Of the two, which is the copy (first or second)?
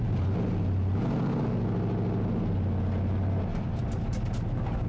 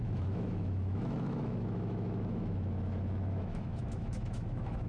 second